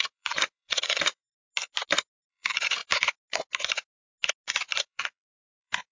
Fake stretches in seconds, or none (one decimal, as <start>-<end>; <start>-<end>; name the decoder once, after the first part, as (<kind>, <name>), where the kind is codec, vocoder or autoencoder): 0.0-1.2 (vocoder, Vocos); 2.3-2.8; 4.8-5.9